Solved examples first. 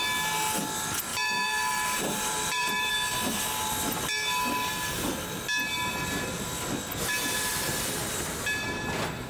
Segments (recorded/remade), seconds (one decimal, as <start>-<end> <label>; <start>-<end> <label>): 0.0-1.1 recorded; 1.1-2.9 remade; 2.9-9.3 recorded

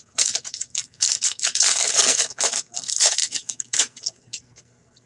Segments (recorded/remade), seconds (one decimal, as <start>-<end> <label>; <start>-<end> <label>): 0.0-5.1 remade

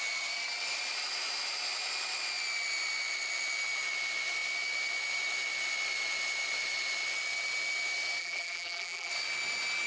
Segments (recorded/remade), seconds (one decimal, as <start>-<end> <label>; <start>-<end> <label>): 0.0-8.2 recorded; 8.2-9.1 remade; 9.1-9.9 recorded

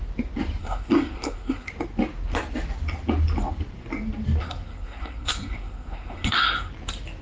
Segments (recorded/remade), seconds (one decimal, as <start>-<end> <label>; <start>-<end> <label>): 0.0-0.6 recorded; 0.6-1.7 remade; 1.7-4.4 recorded; 4.4-6.7 remade; 6.7-7.2 recorded

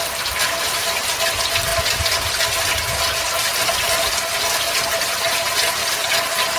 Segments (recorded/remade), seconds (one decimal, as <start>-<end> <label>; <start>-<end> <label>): 0.0-6.6 recorded